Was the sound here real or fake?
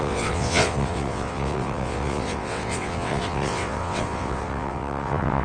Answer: fake